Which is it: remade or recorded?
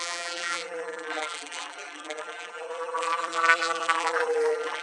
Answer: remade